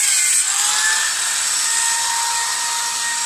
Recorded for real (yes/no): yes